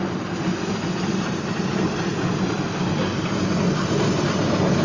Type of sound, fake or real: real